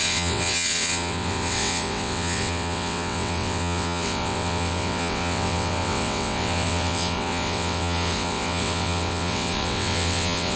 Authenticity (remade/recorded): remade